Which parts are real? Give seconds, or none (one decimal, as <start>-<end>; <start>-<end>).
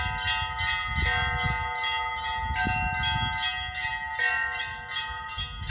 0.0-5.7